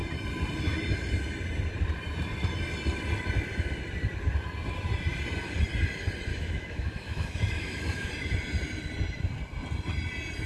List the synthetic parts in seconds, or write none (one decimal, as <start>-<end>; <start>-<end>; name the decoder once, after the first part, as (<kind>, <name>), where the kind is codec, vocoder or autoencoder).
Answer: 6.3-8.1 (autoencoder, DAC-VAE)